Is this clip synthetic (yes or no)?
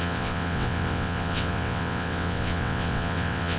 yes